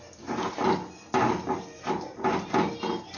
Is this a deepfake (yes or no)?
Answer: no